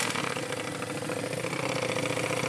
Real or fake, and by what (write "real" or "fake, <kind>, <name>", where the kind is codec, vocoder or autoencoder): real